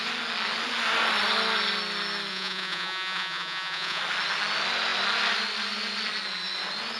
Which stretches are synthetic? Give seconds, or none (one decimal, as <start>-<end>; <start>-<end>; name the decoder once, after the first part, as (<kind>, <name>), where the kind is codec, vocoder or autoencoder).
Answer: 2.3-4.0 (vocoder, Vocos)